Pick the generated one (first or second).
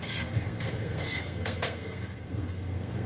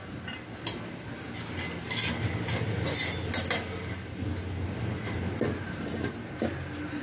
first